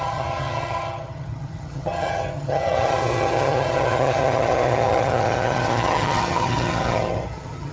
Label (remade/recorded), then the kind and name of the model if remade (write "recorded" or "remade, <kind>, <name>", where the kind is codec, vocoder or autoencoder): remade, vocoder, HiFi-GAN